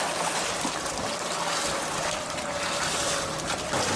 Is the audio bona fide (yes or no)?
yes